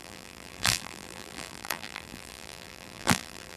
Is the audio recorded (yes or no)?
no